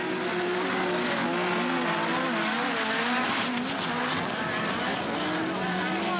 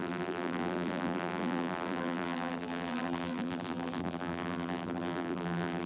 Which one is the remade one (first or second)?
second